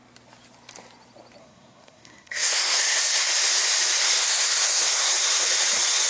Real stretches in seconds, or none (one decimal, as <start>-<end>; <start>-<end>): 0.0-1.4; 3.3-4.0; 5.5-6.1